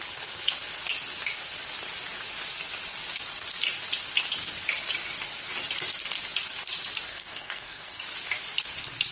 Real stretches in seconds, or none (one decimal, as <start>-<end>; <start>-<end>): 0.0-7.1; 8.0-9.1